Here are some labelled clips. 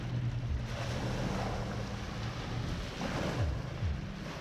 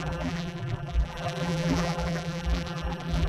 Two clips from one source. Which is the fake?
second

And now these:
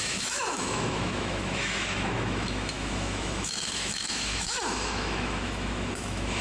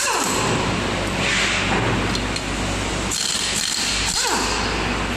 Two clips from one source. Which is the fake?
first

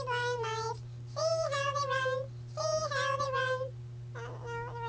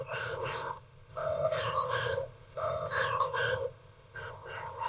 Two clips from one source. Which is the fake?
second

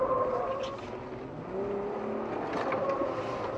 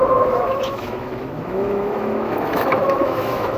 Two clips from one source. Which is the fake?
second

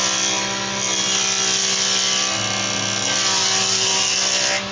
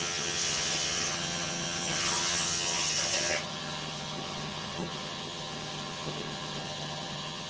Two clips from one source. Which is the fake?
second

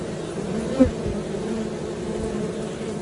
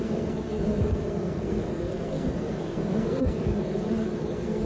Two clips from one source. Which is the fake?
second